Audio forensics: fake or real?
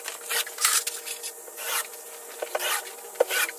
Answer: real